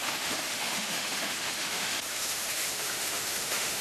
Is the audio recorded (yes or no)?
no